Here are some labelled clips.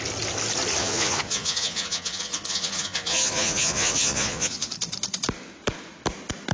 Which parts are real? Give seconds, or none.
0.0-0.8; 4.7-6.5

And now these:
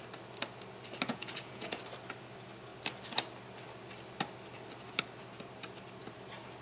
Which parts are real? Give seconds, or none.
0.0-1.1; 1.8-6.6

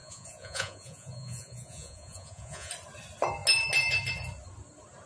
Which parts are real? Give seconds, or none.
2.7-5.1

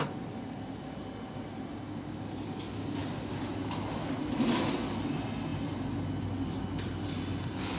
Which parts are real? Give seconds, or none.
0.0-7.8

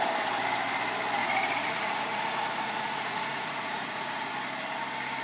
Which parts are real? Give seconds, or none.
0.0-1.2; 4.3-5.2

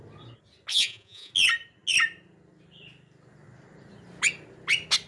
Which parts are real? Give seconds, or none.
0.0-0.7; 1.3-5.1

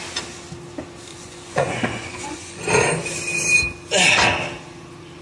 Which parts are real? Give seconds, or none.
0.0-1.1; 2.7-5.2